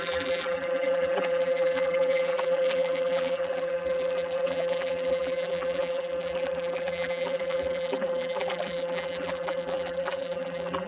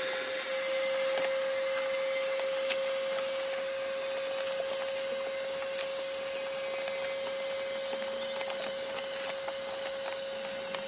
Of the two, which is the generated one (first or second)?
first